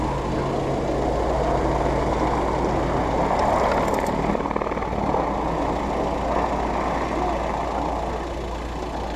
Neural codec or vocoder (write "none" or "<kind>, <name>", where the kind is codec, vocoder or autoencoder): none